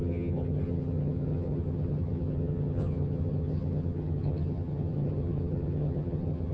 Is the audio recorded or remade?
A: remade